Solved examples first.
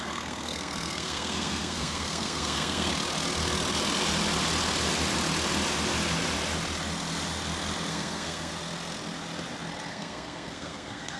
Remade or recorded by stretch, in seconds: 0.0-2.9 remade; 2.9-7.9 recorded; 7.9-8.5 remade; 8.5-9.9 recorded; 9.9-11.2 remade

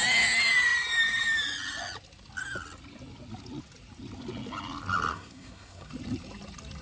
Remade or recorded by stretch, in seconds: 0.0-5.1 recorded; 5.1-5.9 remade; 5.9-6.8 recorded

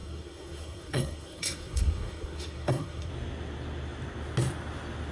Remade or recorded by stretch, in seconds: 0.0-3.1 remade; 3.1-5.1 recorded

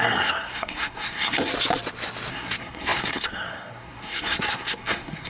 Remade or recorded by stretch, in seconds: 0.0-1.5 remade; 1.5-2.3 recorded; 2.3-5.3 remade